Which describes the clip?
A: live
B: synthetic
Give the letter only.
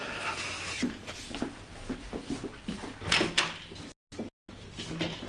A